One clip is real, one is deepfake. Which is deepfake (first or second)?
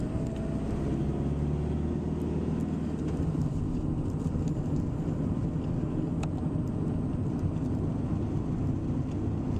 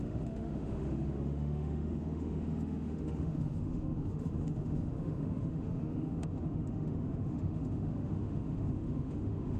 second